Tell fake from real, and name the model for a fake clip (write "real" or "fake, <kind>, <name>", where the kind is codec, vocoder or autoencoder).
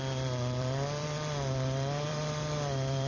fake, vocoder, BigVGAN v2